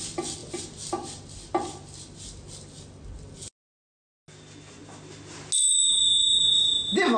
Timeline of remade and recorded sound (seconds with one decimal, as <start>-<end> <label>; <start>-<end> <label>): 0.0-7.2 recorded